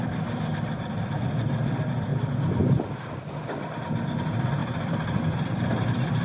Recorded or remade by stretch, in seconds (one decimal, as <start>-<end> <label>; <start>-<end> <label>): 0.0-2.1 remade; 2.1-3.1 recorded; 3.1-6.2 remade